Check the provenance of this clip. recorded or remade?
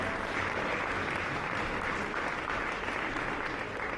recorded